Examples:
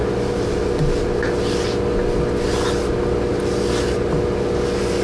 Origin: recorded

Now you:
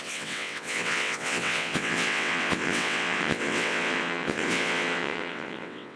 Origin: remade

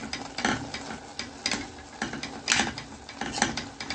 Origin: recorded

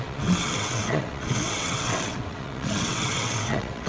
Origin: remade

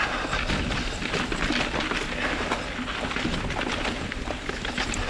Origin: recorded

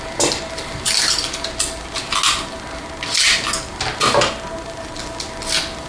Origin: recorded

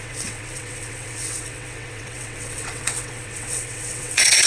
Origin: remade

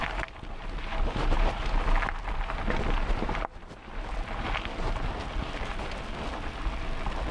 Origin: recorded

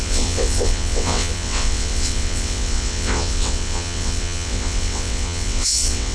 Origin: remade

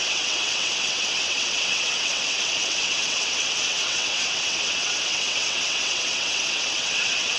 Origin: remade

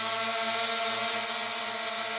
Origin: recorded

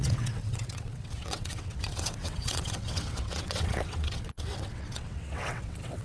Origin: remade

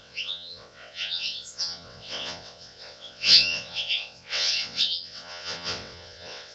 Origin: remade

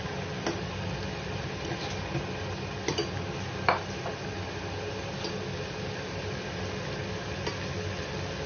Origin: recorded